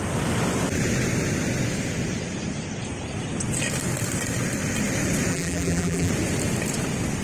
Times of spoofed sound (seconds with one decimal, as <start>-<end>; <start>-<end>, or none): 5.3-6.1